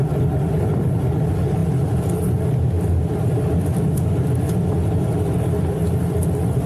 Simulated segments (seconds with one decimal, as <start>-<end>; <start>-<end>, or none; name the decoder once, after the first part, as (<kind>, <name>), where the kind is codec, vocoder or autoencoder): none